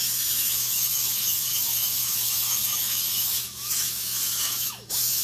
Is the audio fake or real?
fake